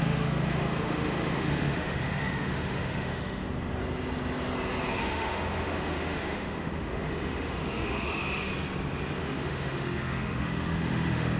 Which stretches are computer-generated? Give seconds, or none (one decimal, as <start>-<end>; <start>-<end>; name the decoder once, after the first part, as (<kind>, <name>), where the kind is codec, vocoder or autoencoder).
0.0-3.4 (autoencoder, DAC-VAE); 5.0-8.5; 9.2-11.4